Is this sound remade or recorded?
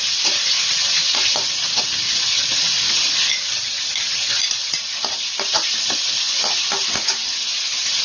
recorded